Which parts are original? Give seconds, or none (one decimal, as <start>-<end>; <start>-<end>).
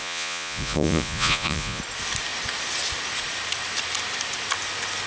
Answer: 1.8-5.1